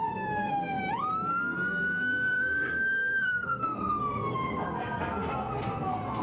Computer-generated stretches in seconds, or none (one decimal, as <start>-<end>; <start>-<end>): 0.0-0.8; 1.3-6.2